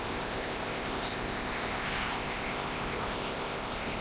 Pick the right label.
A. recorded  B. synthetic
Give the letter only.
B